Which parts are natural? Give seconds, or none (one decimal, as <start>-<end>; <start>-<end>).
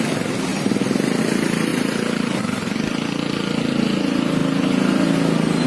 0.0-0.5; 1.2-1.7; 2.4-5.7